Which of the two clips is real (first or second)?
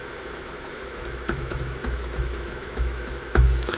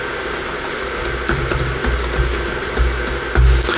second